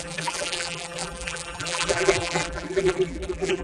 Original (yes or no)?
no